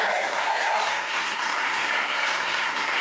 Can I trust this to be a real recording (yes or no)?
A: no